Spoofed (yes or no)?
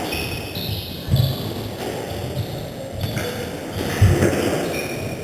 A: no